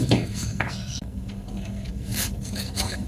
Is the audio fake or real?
fake